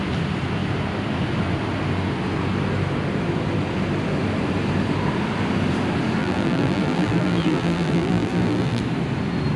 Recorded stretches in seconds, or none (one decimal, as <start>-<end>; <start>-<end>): 0.0-6.2; 8.8-9.6